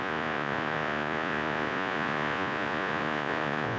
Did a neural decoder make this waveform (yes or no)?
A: yes